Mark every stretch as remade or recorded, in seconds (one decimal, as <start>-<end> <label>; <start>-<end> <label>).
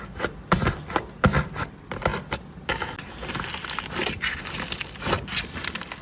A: 0.0-6.0 recorded